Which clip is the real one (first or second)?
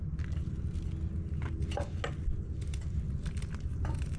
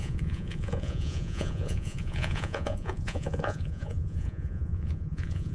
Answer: first